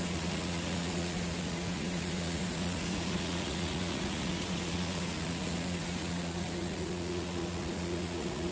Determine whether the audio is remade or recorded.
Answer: remade